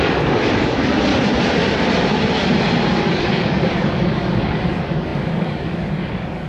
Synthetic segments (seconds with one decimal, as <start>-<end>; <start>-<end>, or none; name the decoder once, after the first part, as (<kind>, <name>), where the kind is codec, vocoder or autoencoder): 0.0-1.1 (codec, DAC); 3.0-6.5